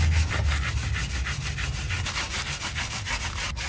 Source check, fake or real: real